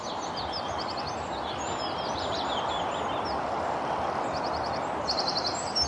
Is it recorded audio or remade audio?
recorded